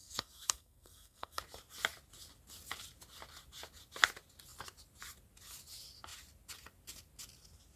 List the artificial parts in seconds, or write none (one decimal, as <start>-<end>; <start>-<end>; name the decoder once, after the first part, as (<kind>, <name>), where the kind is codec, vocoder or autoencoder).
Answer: 0.0-1.4 (codec, SNAC)